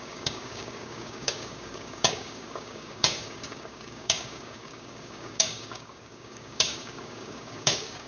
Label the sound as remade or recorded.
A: remade